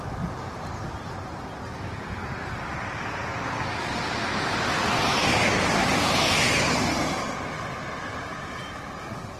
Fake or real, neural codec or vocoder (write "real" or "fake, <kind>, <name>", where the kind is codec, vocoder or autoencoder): real